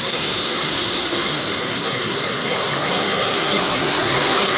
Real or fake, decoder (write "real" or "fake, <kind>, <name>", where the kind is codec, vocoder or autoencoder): fake, codec, SNAC